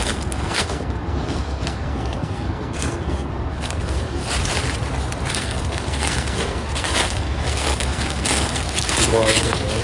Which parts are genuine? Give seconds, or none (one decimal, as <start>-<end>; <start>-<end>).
4.2-5.3